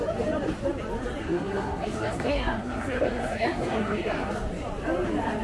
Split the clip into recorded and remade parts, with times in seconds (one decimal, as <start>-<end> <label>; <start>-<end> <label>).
0.0-1.2 recorded; 1.2-4.3 remade; 4.3-5.4 recorded